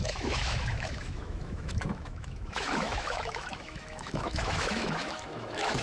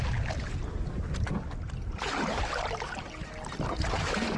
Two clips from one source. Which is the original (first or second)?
second